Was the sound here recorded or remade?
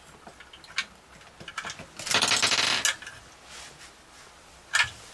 recorded